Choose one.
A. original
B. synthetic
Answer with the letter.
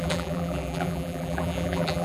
B